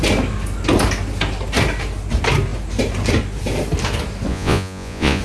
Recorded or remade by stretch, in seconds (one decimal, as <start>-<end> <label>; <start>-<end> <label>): 0.0-4.3 recorded; 4.3-5.2 remade

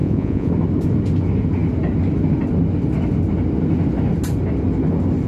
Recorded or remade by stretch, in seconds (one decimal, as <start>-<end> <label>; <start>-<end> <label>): 0.0-0.5 remade; 0.5-5.3 recorded

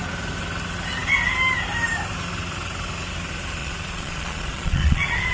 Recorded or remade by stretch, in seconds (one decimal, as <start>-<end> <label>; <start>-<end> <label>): 0.0-3.6 recorded; 3.6-5.3 remade

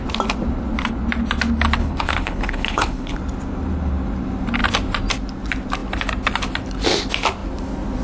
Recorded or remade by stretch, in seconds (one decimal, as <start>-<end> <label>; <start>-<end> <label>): 0.0-1.8 recorded; 1.8-3.2 remade; 3.2-8.0 recorded

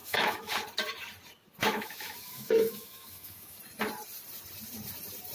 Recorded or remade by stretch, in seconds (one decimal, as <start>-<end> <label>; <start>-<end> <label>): 0.0-0.5 remade; 0.5-1.6 recorded; 1.6-3.6 remade; 3.6-5.3 recorded

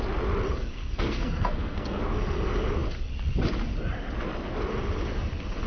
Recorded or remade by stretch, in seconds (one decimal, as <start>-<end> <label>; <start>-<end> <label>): 0.0-0.7 recorded; 0.7-2.0 remade; 2.0-5.7 recorded